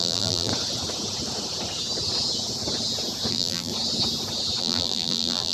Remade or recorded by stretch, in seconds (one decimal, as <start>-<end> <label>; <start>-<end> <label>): 0.0-0.5 remade; 0.5-3.3 recorded; 3.3-3.7 remade; 3.7-4.6 recorded; 4.6-5.5 remade